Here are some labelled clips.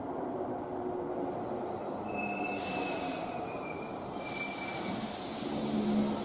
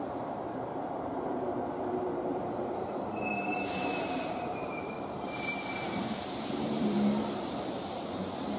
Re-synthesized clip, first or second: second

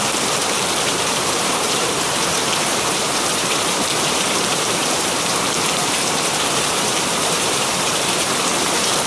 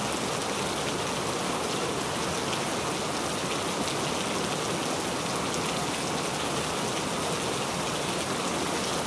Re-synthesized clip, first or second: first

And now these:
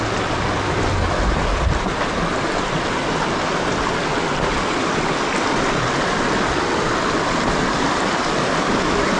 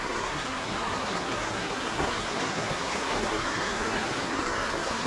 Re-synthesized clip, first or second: second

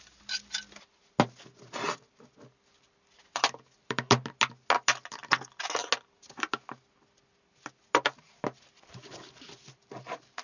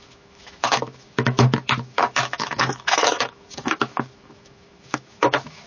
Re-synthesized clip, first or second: second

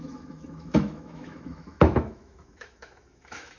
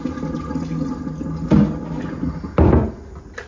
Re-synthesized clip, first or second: first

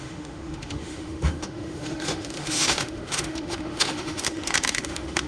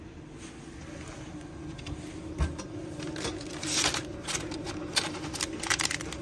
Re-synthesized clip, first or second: first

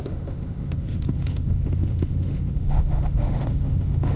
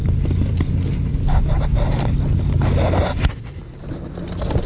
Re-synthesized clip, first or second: first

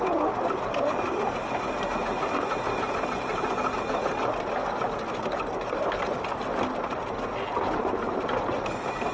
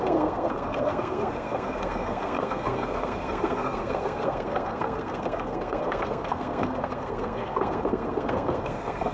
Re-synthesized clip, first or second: second